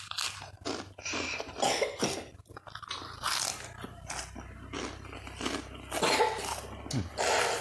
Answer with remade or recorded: recorded